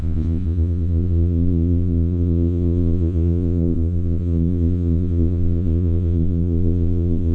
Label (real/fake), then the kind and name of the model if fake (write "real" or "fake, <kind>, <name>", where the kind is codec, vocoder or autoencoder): fake, vocoder, Vocos